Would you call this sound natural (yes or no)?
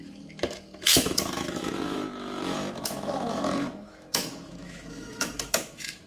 no